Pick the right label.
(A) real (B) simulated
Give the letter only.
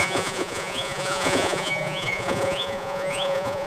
B